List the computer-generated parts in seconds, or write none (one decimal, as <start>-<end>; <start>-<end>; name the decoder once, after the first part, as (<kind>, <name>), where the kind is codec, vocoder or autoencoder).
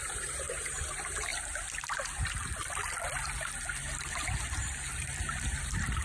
0.0-1.3 (vocoder, BigVGAN v2); 4.9-6.0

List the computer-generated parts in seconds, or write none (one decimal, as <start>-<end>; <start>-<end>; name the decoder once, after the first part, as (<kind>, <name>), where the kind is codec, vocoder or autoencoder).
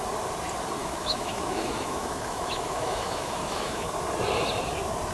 0.8-3.9 (autoencoder, DAC-VAE)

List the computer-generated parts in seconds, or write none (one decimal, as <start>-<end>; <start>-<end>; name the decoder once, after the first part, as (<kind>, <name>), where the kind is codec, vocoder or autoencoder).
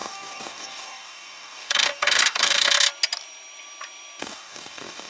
0.0-2.7 (codec, DAC); 4.2-5.1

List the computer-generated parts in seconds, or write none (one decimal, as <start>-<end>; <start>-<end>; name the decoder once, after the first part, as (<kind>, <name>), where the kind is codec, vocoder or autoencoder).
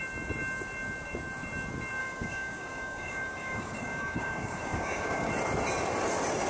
2.0-5.3 (codec, DAC)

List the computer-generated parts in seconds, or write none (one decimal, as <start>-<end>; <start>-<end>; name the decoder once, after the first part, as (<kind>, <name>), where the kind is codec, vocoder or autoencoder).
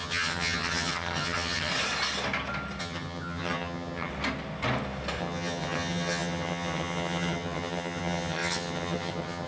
0.0-1.7 (vocoder, HiFi-GAN); 2.8-4.1; 5.2-9.5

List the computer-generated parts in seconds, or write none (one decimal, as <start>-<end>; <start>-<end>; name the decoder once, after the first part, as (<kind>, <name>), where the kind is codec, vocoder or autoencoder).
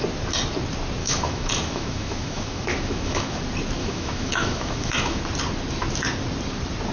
1.0-3.4 (autoencoder, DAC-VAE); 3.8-5.2